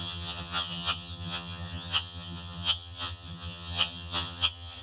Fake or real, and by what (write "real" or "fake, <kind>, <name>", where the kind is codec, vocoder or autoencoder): fake, vocoder, HiFi-GAN